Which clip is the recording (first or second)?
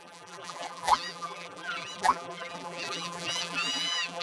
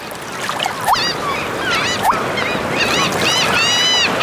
second